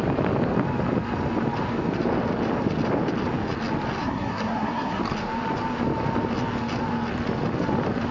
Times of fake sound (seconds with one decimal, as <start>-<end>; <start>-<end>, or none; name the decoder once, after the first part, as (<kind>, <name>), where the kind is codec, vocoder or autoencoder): 4.0-5.0 (codec, SNAC)